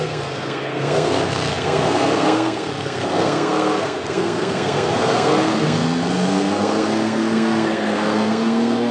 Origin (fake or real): fake